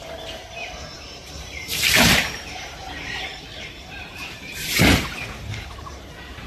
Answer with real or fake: fake